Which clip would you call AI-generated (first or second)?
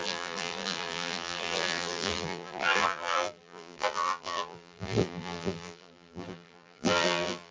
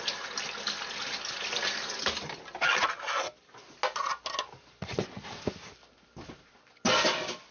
first